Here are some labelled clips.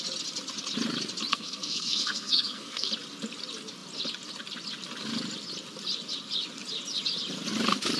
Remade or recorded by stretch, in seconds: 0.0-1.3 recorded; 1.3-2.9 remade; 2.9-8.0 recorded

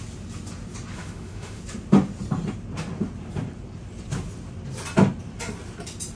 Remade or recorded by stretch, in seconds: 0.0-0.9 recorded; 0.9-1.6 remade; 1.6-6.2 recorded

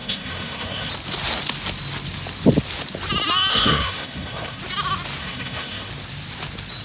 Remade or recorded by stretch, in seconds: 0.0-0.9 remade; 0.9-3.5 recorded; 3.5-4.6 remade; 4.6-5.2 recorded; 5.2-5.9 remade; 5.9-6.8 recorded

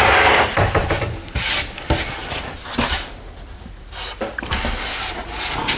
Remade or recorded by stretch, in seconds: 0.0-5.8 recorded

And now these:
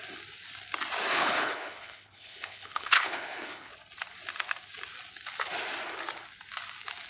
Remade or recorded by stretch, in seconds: 0.0-1.1 recorded; 1.1-3.7 remade; 3.7-7.1 recorded